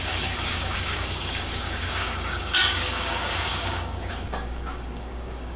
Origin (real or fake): fake